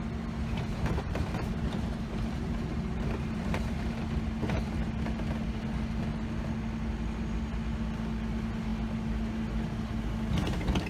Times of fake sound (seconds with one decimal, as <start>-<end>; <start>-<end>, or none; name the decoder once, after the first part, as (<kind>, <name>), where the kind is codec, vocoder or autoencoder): 0.7-4.0 (vocoder, BigVGAN v2)